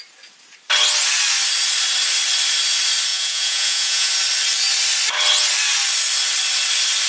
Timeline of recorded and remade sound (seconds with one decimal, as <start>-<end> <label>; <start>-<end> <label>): 0.0-3.1 recorded; 3.1-4.1 remade; 4.1-7.1 recorded